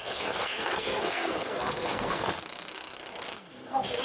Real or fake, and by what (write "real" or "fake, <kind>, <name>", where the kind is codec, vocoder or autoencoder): fake, codec, SNAC